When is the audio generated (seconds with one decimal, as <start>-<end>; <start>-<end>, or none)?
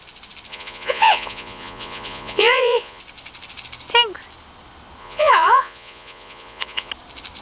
0.5-3.0; 5.0-6.9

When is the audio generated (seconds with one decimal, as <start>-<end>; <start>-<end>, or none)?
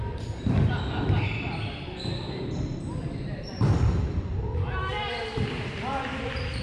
none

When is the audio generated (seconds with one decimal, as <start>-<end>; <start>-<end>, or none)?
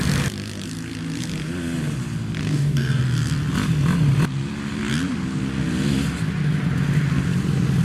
2.4-3.0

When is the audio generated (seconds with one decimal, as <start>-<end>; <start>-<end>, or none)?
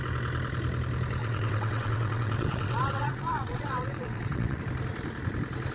1.2-4.6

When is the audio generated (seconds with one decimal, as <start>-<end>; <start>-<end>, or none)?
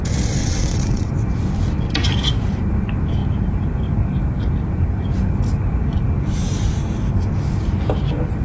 0.4-1.1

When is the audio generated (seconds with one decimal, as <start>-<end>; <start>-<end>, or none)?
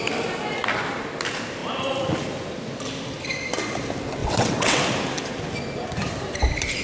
4.2-4.8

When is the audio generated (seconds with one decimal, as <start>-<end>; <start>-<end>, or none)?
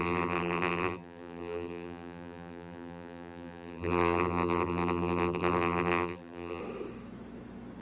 0.0-6.6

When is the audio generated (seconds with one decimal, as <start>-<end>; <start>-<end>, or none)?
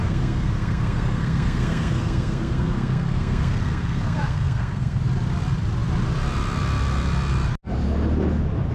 0.0-5.0